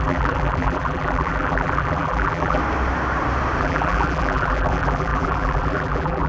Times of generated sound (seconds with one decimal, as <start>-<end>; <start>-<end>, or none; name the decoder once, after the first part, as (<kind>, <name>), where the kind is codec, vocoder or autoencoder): 0.0-2.6 (vocoder, BigVGAN v2); 3.6-6.3